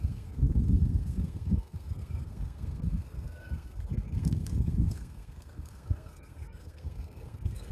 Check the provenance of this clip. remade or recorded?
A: remade